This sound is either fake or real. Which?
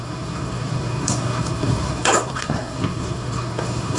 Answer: fake